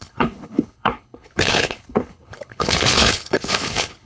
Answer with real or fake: fake